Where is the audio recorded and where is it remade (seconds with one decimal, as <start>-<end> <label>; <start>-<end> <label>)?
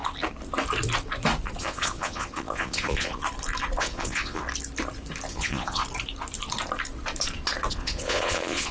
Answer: 0.0-1.6 recorded; 1.6-3.2 remade; 3.2-3.8 recorded; 3.8-4.4 remade; 4.4-5.3 recorded; 5.3-5.8 remade; 5.8-7.7 recorded; 7.7-8.7 remade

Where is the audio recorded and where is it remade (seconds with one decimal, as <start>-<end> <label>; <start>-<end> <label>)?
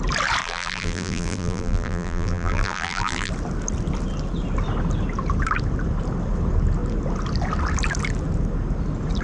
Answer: 0.0-0.4 recorded; 0.4-3.3 remade; 3.3-9.2 recorded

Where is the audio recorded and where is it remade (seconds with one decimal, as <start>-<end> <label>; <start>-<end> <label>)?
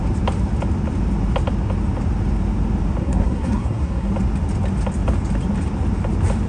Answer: 0.0-3.0 recorded; 3.0-4.1 remade; 4.1-6.5 recorded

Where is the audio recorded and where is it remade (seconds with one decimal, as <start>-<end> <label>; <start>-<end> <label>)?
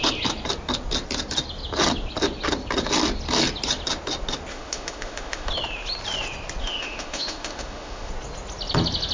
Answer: 0.0-4.5 recorded; 4.5-5.5 remade; 5.5-6.6 recorded; 6.6-8.1 remade; 8.1-9.1 recorded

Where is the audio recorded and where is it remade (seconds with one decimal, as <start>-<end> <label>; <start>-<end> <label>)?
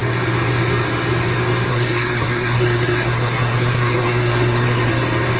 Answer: 0.0-1.7 recorded; 1.7-4.9 remade; 4.9-5.4 recorded